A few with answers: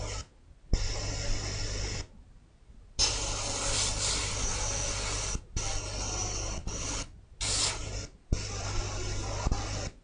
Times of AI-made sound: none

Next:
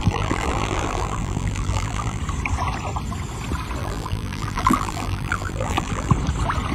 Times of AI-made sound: 0.0-2.2 (vocoder, BigVGAN v2); 3.8-6.1

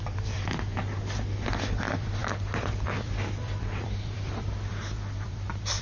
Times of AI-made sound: 0.0-0.7 (vocoder, BigVGAN v2); 1.6-5.8

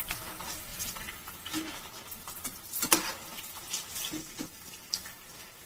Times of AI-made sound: 0.7-1.8 (vocoder, BigVGAN v2)

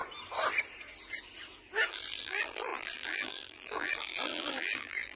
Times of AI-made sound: 1.9-5.2 (vocoder, BigVGAN v2)

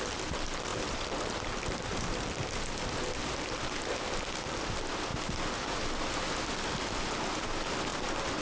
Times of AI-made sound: 0.7-2.4 (vocoder, BigVGAN v2)

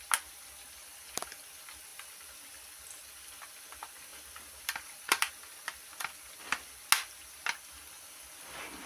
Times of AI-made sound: 1.9-3.4 (vocoder, BigVGAN v2); 4.1-5.3

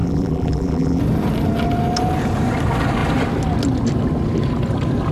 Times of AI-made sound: 0.0-1.0 (vocoder, BigVGAN v2)